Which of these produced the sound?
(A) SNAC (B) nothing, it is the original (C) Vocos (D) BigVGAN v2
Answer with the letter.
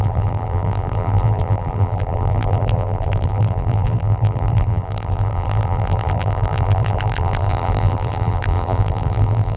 D